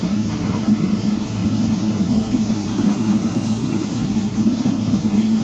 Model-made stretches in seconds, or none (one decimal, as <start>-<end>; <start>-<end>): 0.0-5.4